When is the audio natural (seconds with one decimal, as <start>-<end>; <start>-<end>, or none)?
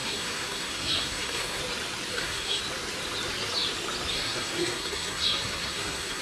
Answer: 1.6-2.1; 2.6-4.1